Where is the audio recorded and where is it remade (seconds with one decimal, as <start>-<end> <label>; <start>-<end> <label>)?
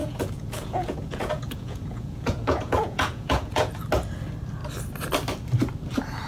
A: 0.0-3.8 remade; 3.8-6.3 recorded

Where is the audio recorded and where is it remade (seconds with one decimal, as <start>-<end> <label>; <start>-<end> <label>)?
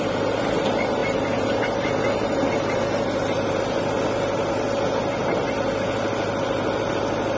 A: 0.0-7.4 recorded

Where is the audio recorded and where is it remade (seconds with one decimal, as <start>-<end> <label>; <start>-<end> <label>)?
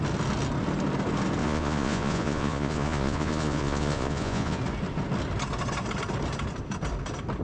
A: 0.0-1.4 recorded; 1.4-4.6 remade; 4.6-7.4 recorded